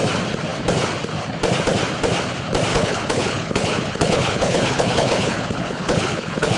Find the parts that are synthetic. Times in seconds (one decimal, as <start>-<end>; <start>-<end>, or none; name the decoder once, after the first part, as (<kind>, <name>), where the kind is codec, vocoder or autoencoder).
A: 2.7-6.6 (codec, HILCodec)